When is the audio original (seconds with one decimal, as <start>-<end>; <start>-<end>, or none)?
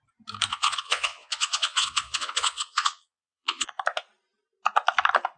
0.0-0.5; 3.7-5.4